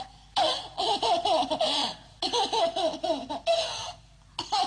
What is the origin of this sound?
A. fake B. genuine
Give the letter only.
B